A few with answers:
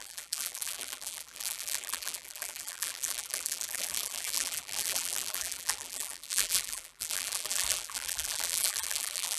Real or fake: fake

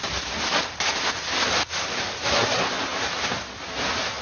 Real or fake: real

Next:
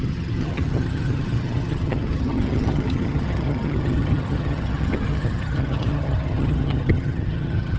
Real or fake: fake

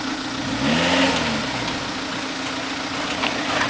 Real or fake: real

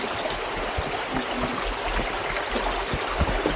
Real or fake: real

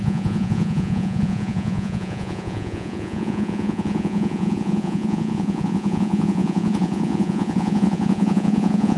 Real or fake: fake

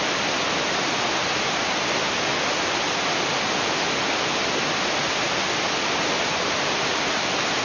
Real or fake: real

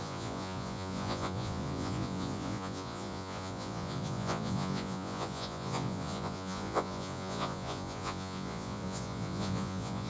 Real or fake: fake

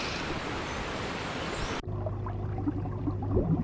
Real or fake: fake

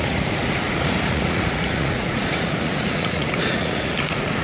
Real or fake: fake